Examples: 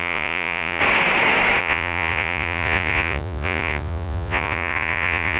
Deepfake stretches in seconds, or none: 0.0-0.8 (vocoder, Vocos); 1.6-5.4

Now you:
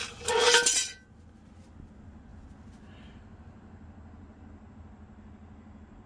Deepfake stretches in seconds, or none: none

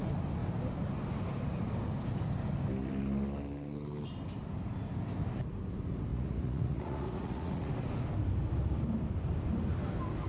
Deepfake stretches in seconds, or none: 6.1-7.7 (vocoder, Vocos)

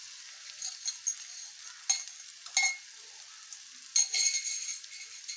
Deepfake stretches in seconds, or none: none

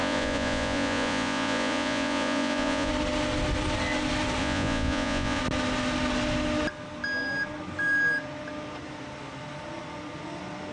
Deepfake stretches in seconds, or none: 0.0-2.9 (vocoder, Vocos); 4.4-5.4

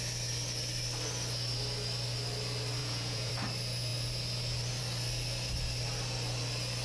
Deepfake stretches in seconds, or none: 2.8-3.3 (vocoder, Vocos)

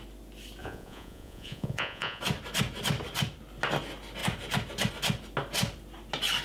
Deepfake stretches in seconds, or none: 0.6-2.2 (vocoder, Vocos)